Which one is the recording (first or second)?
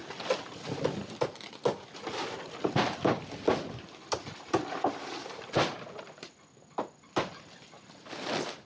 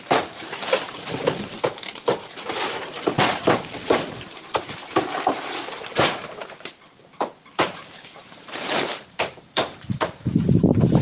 first